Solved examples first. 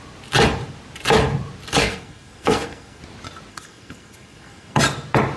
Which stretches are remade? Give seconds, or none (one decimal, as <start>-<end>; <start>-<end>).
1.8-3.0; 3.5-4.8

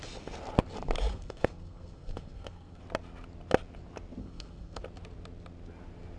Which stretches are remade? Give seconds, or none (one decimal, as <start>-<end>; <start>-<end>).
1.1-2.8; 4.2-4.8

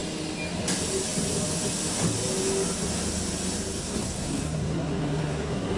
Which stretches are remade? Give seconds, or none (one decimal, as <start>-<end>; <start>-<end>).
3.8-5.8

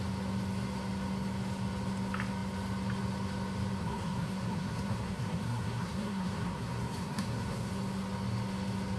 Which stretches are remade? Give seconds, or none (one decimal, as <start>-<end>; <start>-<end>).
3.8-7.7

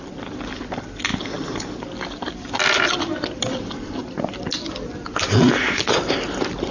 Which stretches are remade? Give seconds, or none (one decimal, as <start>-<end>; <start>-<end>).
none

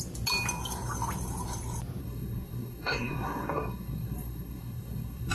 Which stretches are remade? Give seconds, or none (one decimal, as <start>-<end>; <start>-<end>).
2.0-5.3

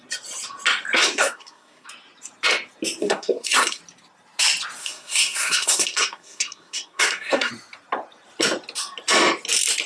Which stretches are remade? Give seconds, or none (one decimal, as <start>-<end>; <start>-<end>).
1.0-1.9; 3.0-3.8; 4.8-7.5